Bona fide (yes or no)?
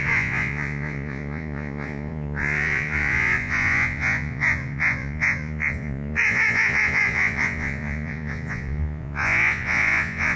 no